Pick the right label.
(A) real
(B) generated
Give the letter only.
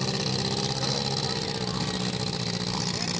A